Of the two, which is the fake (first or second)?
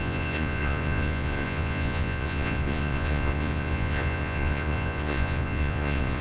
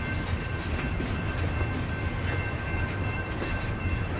first